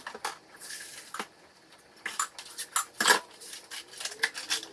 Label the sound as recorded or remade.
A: recorded